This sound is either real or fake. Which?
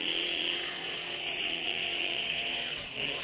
fake